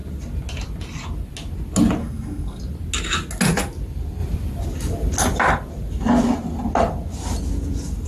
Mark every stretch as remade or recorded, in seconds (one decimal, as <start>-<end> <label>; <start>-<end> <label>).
0.0-2.0 recorded; 2.0-2.6 remade; 2.6-8.1 recorded